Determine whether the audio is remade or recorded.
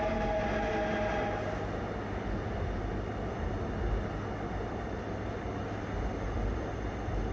recorded